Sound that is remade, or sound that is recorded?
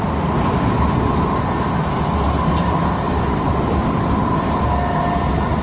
recorded